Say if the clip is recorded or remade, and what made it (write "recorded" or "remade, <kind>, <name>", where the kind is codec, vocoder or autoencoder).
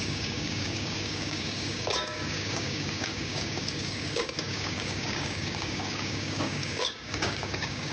remade, codec, DAC